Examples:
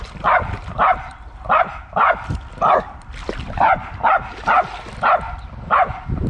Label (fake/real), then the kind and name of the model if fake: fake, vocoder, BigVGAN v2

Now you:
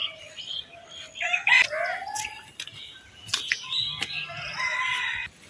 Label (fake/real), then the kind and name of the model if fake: real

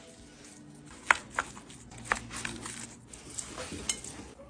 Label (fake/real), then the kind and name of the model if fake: real